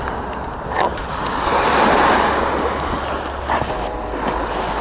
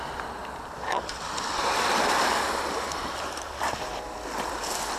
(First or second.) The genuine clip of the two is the first